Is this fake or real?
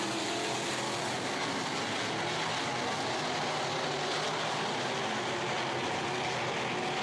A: real